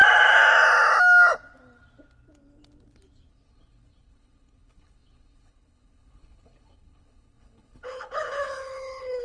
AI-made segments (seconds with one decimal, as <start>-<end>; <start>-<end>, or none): 3.3-9.2